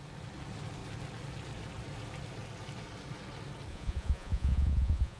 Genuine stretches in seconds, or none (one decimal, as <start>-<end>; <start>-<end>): 0.0-3.7